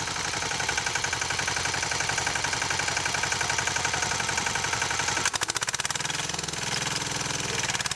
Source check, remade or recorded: recorded